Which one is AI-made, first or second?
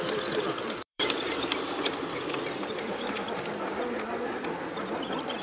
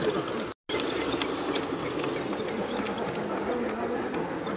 first